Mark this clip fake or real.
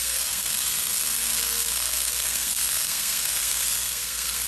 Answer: fake